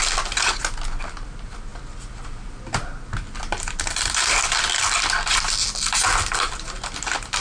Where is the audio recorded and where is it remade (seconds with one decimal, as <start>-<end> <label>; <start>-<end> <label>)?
0.0-7.4 recorded